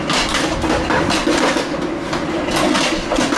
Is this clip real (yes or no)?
yes